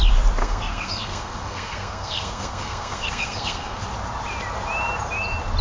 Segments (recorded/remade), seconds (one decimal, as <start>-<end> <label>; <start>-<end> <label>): 0.0-0.4 recorded; 0.4-3.8 remade; 3.8-5.6 recorded